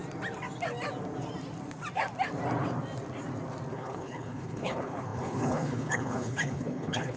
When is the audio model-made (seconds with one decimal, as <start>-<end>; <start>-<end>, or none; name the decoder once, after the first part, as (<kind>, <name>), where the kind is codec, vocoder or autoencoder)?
3.7-7.2 (codec, HILCodec)